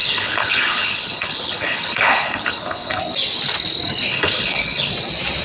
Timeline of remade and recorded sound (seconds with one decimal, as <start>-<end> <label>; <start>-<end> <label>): 0.0-3.0 remade; 3.0-4.1 recorded; 4.1-4.9 remade; 4.9-5.4 recorded